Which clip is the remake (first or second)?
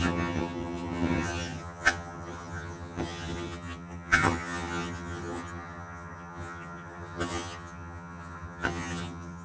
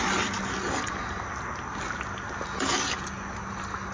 first